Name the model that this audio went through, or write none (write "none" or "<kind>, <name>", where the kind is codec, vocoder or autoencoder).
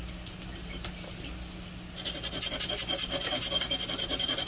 none